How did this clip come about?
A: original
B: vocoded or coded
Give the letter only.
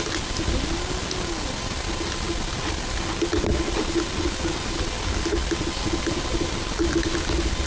A